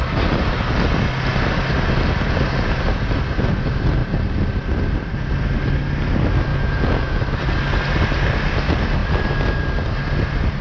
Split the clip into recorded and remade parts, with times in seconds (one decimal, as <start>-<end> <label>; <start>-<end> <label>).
0.0-6.5 recorded; 6.5-7.2 remade; 7.2-10.6 recorded